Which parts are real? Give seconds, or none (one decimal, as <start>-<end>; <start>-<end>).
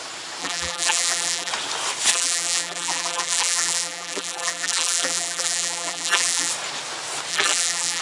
0.0-0.4; 1.5-2.1; 6.5-7.3